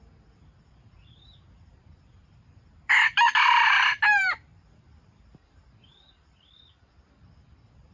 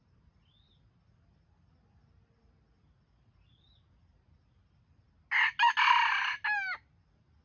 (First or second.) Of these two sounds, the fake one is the first